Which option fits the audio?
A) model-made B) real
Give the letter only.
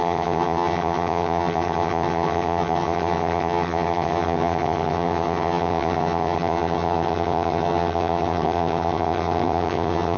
A